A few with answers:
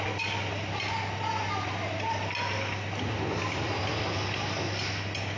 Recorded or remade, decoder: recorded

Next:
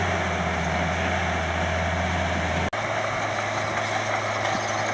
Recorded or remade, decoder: recorded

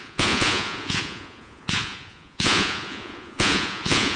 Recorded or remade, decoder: remade, vocoder, Vocos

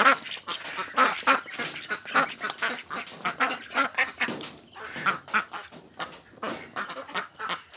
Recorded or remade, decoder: recorded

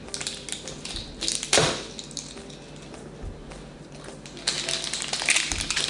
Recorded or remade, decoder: recorded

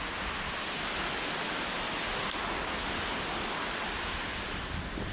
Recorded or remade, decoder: recorded